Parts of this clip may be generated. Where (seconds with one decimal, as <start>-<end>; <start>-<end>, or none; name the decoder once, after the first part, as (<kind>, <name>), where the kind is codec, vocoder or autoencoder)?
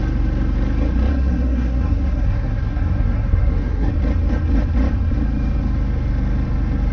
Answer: 1.1-3.9 (codec, SNAC)